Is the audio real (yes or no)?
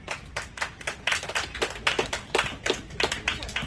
yes